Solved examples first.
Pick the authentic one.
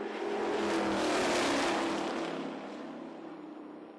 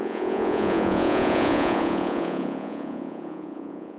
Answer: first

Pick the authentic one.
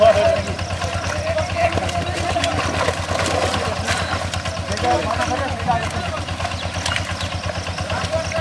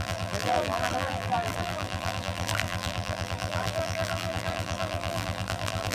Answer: first